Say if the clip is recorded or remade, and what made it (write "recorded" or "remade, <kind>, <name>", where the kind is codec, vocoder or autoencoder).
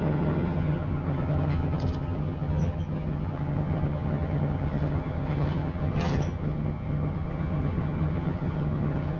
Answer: remade, vocoder, HiFi-GAN